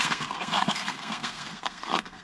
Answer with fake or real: fake